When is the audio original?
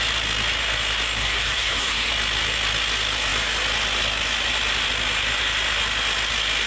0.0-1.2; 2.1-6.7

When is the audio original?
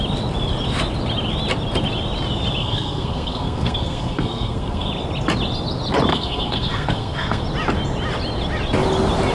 0.0-2.6; 4.9-6.1; 7.4-9.3